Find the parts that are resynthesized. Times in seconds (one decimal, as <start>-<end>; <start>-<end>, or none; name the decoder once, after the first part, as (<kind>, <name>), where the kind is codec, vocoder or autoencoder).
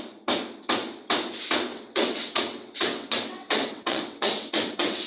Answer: 1.7-5.1 (vocoder, WaveNeXt)